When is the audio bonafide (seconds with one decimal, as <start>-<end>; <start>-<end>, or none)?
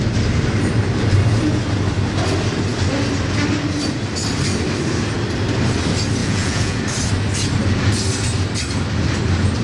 0.0-6.2; 6.8-9.6